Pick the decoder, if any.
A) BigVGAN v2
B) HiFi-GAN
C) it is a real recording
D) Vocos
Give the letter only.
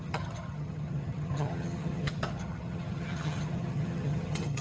B